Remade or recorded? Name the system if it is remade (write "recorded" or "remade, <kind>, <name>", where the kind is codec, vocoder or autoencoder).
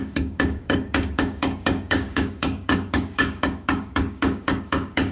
remade, codec, DAC